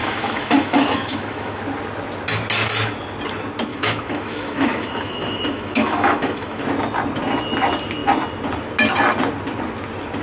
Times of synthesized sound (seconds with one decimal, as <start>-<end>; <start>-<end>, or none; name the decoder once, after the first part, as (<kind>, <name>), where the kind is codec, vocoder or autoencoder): 0.0-1.6 (autoencoder, DAC-VAE); 3.7-6.6